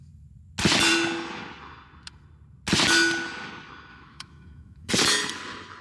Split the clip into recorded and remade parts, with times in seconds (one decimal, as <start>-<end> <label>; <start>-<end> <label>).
0.0-3.9 recorded; 3.9-4.9 remade; 4.9-5.8 recorded